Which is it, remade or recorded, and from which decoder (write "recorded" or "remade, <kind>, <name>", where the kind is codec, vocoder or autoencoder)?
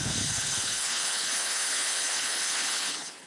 remade, codec, HILCodec